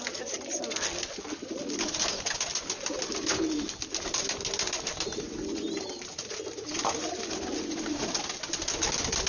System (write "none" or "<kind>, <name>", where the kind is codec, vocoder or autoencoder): none